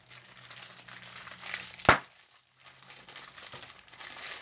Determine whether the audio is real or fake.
real